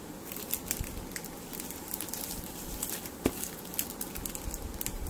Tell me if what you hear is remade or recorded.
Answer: recorded